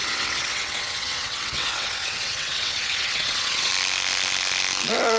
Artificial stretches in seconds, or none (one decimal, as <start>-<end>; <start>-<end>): 0.0-3.7